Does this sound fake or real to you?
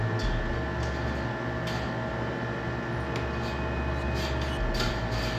real